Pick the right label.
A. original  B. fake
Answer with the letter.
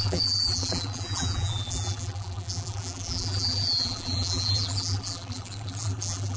B